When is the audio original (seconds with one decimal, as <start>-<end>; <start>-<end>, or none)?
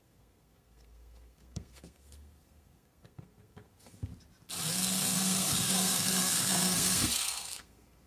4.1-4.7